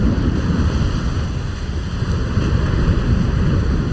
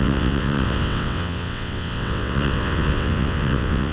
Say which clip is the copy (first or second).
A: second